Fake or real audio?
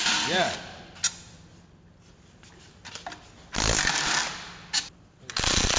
real